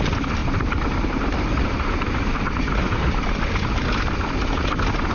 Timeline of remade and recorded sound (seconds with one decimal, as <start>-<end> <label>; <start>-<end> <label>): 0.0-0.4 recorded; 0.4-3.5 remade; 3.5-5.1 recorded